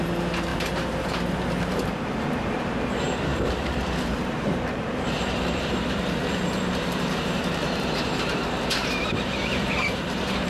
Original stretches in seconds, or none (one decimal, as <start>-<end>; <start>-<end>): 8.4-9.0